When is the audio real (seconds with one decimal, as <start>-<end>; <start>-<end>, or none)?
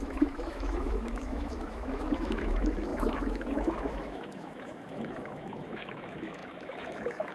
none